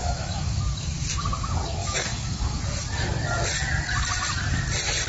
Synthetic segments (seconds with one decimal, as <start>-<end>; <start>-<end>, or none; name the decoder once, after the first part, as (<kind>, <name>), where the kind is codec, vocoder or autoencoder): 0.0-0.5 (autoencoder, DAC-VAE); 1.8-2.6